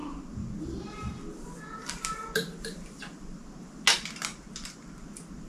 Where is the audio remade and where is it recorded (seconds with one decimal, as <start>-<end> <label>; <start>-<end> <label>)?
0.0-5.5 recorded